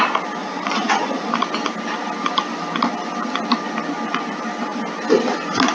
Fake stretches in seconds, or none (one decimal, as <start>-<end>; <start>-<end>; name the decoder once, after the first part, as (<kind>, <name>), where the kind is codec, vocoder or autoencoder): 0.4-1.3 (vocoder, Vocos)